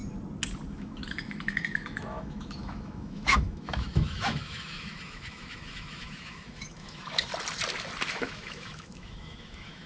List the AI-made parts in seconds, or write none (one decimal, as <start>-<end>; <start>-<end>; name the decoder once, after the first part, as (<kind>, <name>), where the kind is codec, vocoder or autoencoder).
0.7-7.3 (autoencoder, DAC-VAE); 8.1-9.9